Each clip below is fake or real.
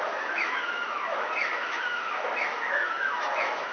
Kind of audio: fake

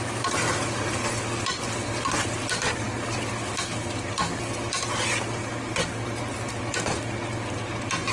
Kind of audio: real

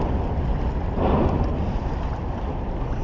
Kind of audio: real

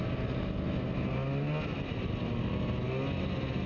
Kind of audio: real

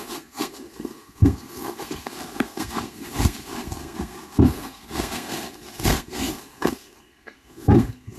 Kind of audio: fake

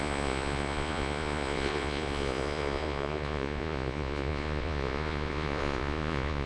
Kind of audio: fake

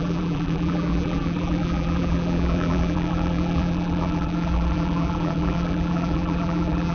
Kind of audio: fake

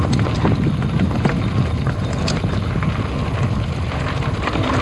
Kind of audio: real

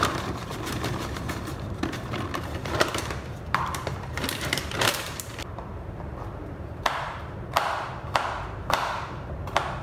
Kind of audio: fake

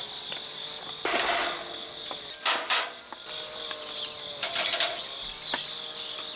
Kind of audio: real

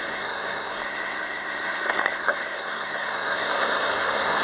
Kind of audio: fake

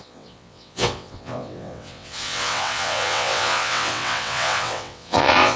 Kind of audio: fake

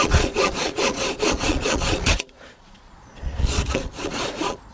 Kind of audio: fake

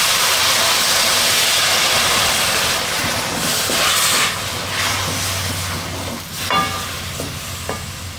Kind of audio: real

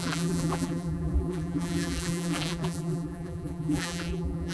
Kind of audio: fake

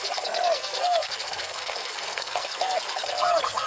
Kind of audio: fake